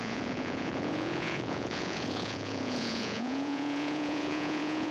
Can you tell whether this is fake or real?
fake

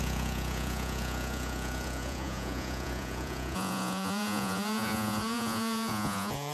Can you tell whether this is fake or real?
fake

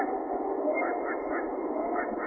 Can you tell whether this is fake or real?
real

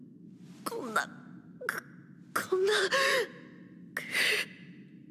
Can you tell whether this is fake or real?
real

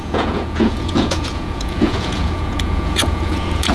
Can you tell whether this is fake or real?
fake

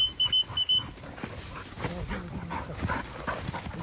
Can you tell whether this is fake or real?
real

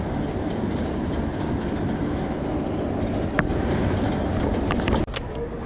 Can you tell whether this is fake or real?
real